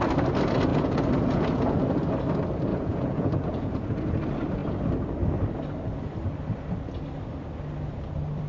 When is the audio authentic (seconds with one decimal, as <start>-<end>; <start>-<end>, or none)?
0.0-0.7; 1.8-2.7; 3.9-8.5